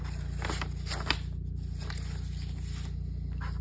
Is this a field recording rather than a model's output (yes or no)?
yes